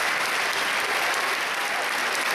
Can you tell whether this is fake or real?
real